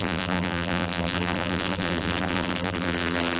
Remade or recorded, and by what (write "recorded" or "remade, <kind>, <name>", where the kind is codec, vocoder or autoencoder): remade, vocoder, BigVGAN v2